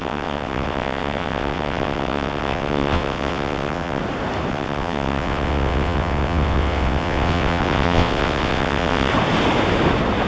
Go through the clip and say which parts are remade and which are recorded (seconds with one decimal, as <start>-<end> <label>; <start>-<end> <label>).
0.0-4.0 remade; 4.0-4.5 recorded; 4.5-9.1 remade; 9.1-10.3 recorded